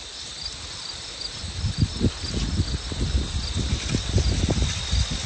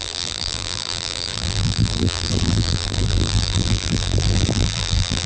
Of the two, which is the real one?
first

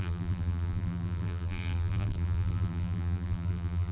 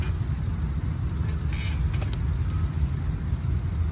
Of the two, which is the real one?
second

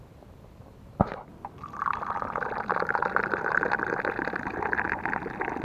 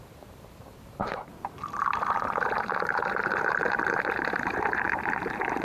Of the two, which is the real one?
first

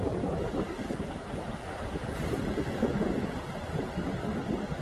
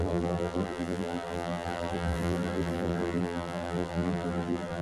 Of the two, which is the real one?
first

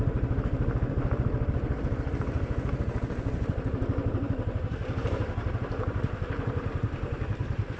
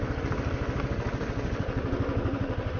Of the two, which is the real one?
second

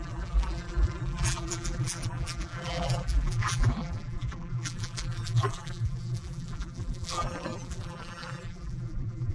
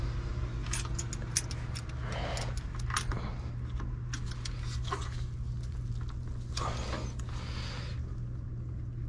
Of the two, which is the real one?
second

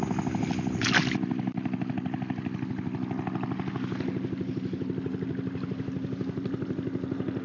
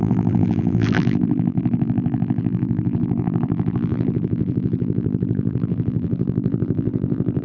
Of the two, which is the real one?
first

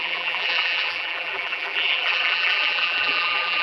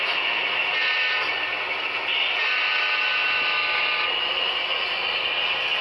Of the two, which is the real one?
second